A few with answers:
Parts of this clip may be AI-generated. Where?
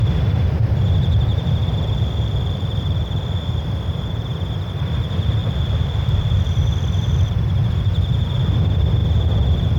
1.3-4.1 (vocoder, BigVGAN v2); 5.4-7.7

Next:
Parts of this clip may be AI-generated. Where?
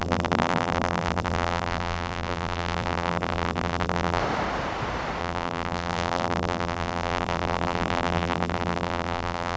0.0-4.2 (vocoder, BigVGAN v2); 5.2-9.6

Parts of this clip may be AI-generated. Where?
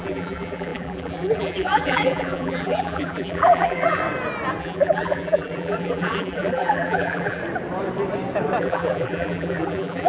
0.0-4.0 (vocoder, BigVGAN v2); 4.6-7.4; 8.6-10.1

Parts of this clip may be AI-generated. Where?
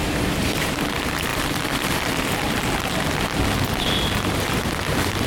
0.0-0.7 (vocoder, BigVGAN v2); 1.3-2.6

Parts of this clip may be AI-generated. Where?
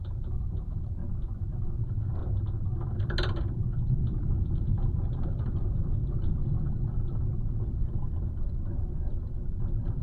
0.0-1.0 (vocoder, BigVGAN v2); 1.8-2.2; 4.4-6.0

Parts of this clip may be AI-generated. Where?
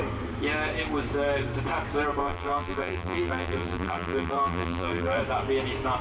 2.2-5.2 (vocoder, BigVGAN v2)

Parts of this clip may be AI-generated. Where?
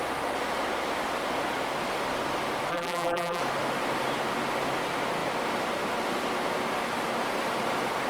2.7-3.4 (vocoder, BigVGAN v2)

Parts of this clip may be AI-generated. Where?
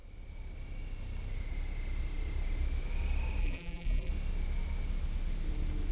3.4-4.1 (vocoder, BigVGAN v2)